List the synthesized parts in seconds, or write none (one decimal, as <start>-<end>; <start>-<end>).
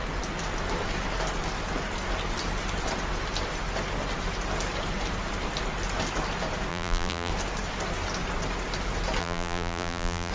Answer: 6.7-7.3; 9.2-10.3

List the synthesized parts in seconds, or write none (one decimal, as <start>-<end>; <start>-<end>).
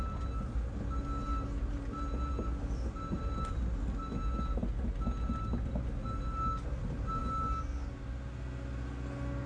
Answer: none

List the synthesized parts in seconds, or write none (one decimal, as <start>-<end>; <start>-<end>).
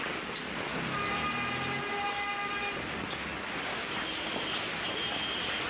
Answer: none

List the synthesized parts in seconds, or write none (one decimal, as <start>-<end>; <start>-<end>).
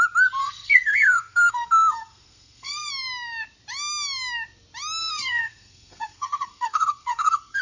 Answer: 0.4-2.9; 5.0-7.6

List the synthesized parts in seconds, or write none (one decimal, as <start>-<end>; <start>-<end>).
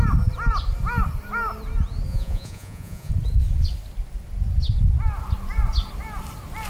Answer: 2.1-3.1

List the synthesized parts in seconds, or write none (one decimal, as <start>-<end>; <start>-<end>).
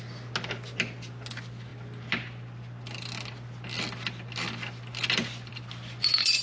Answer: none